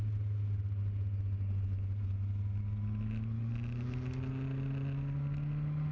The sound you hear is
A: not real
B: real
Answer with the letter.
B